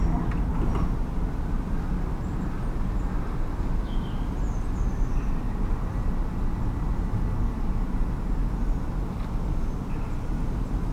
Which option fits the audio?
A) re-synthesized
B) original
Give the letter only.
B